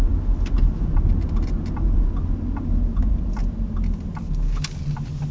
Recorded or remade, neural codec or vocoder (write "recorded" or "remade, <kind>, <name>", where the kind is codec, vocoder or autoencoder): recorded